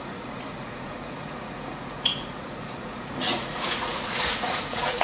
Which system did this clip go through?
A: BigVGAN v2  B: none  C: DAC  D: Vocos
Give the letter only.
D